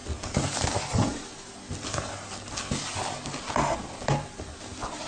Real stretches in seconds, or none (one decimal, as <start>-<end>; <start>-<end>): 0.0-5.1

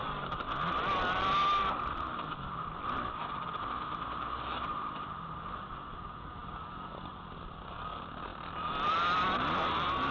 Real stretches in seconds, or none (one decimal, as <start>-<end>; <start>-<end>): 0.0-10.1